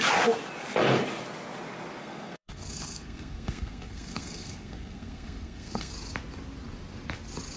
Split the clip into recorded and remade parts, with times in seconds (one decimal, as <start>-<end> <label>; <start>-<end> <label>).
0.0-2.0 recorded; 2.0-5.9 remade; 5.9-7.6 recorded